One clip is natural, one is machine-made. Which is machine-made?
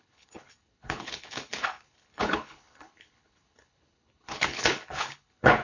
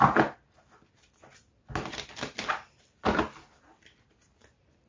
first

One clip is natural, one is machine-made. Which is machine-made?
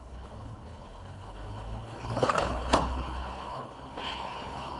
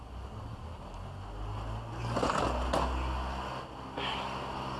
first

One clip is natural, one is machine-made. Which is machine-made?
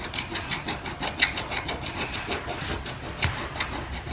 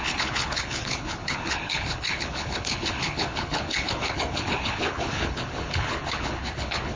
second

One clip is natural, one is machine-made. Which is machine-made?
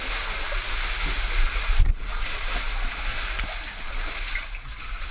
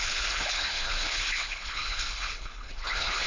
second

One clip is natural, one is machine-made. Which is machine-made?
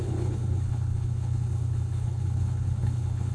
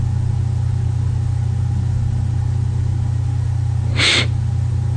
first